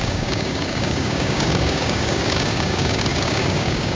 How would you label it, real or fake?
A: fake